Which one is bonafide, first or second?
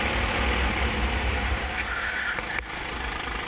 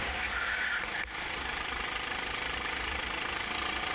first